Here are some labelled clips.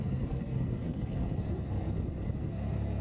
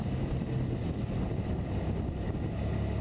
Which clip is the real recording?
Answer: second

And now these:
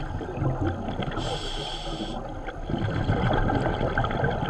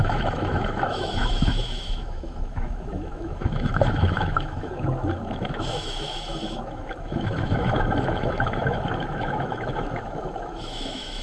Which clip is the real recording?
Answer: first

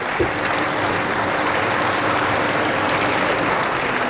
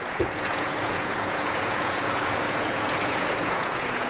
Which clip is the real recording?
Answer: first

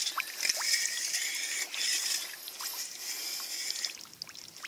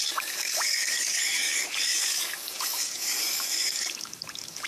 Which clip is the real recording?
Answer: first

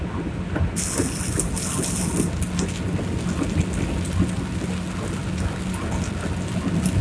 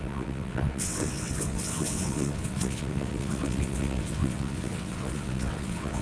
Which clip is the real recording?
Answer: first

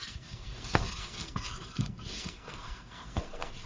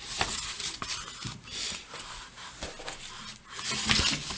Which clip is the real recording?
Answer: second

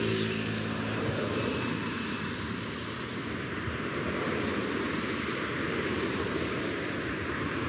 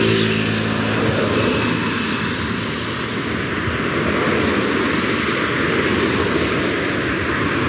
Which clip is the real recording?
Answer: second